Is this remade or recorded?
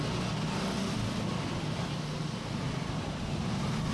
recorded